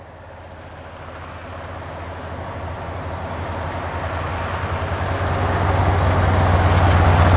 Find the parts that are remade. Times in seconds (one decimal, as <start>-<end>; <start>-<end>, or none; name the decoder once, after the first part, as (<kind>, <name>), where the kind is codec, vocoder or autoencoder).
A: none